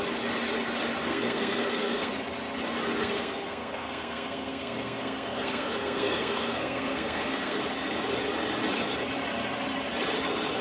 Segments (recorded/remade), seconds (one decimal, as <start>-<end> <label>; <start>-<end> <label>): 0.0-1.1 recorded; 1.1-2.1 remade; 2.1-3.0 recorded; 3.0-7.6 remade; 7.6-10.6 recorded